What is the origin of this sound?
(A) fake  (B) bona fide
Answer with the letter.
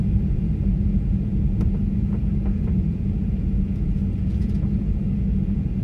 A